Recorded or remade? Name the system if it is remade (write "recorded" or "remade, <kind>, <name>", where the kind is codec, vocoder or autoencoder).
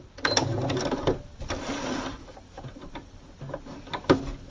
recorded